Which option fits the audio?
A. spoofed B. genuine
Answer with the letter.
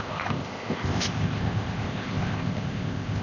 A